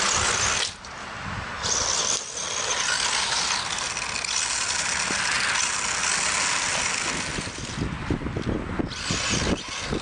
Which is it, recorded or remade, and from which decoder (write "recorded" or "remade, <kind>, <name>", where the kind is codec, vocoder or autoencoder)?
recorded